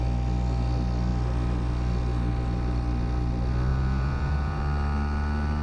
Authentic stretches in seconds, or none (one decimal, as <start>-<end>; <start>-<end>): 0.0-3.7; 4.6-5.6